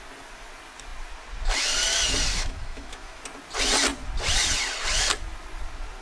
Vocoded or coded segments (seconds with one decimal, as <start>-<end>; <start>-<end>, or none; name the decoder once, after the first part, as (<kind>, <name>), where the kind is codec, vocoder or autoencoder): 2.3-3.2 (autoencoder, DAC-VAE)